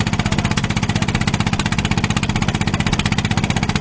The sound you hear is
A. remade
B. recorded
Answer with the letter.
B